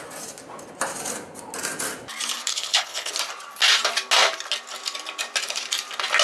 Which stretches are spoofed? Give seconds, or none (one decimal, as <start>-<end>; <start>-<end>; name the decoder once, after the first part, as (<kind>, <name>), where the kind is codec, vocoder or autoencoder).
2.5-3.1 (codec, HILCodec)